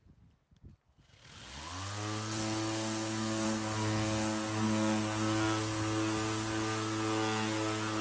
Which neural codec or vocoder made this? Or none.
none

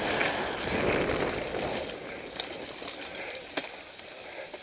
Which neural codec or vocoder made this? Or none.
none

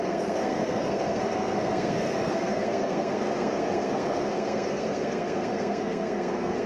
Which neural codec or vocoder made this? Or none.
codec, SNAC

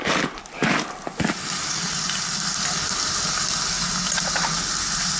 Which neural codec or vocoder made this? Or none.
none